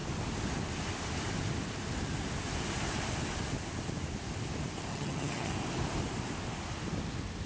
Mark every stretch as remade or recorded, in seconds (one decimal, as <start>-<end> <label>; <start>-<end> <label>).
0.0-4.9 recorded; 4.9-5.5 remade; 5.5-7.5 recorded